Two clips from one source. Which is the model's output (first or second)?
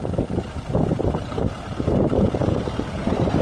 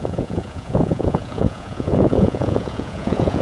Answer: second